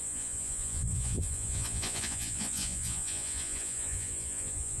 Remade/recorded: remade